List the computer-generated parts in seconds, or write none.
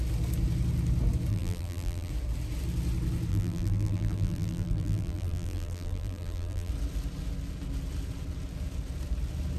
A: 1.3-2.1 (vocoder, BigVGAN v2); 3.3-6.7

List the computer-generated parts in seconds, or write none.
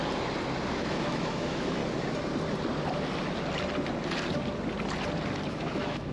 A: 0.7-1.8 (autoencoder, DAC-VAE); 5.5-6.1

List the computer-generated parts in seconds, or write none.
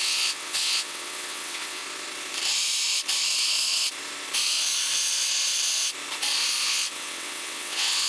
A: 0.0-1.8 (vocoder, WaveNeXt); 6.7-8.1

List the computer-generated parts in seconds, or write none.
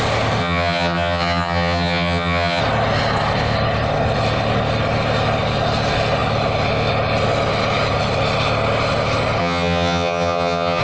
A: 0.4-2.6 (vocoder, HiFi-GAN); 9.4-10.8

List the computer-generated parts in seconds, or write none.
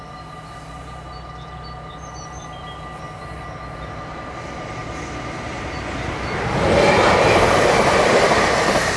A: none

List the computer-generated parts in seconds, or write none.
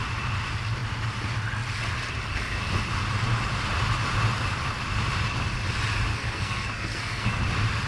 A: 6.1-7.4 (codec, SNAC)